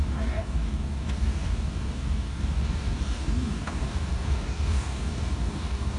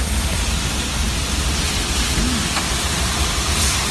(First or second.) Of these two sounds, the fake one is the first